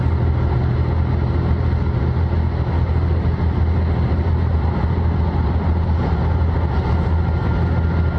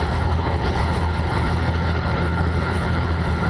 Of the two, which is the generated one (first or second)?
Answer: second